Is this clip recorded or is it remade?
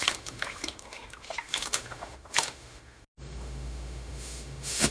remade